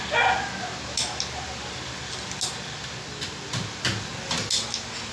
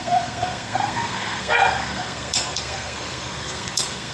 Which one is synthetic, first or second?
second